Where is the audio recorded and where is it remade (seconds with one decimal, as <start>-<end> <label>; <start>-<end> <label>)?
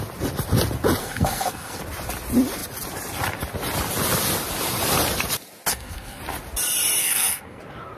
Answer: 0.0-1.0 recorded; 1.0-1.8 remade; 1.8-5.7 recorded; 5.7-6.2 remade; 6.2-7.0 recorded; 7.0-7.6 remade; 7.6-8.0 recorded